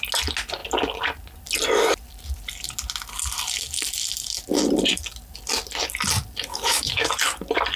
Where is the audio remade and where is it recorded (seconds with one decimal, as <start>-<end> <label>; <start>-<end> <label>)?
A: 0.0-6.5 recorded; 6.5-7.1 remade; 7.1-7.8 recorded